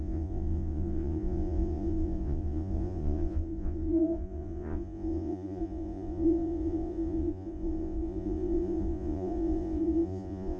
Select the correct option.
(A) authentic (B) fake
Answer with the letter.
B